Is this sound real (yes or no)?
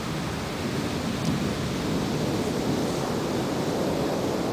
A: yes